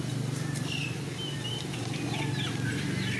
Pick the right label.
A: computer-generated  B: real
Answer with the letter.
B